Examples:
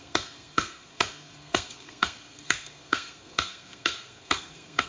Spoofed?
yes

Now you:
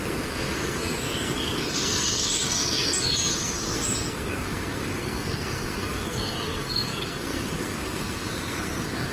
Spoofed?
yes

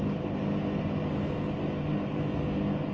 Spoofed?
no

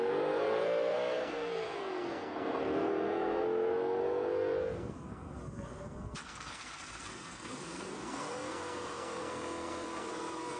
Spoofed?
yes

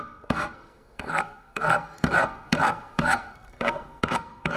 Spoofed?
yes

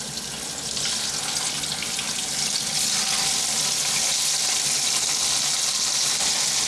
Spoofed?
no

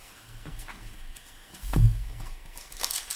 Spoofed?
yes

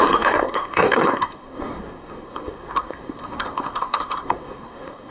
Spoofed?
yes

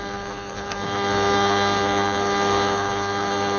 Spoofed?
yes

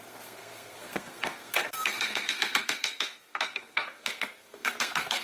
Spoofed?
yes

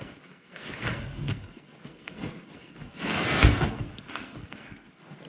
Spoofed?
yes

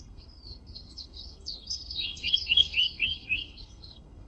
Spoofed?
yes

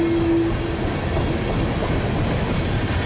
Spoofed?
no